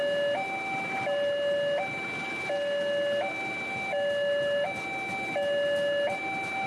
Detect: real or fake real